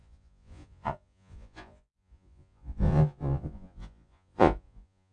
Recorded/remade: remade